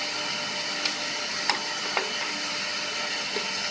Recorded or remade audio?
recorded